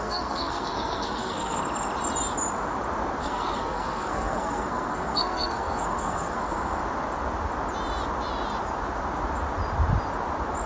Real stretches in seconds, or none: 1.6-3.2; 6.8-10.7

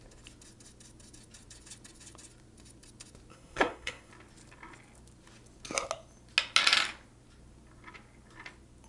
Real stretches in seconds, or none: 0.0-3.3; 4.1-8.9

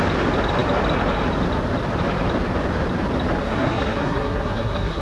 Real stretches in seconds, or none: 0.0-3.4

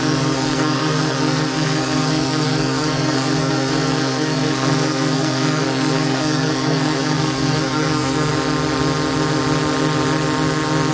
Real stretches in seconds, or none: 8.3-10.9